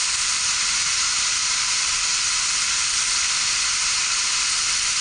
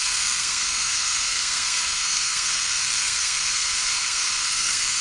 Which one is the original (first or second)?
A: first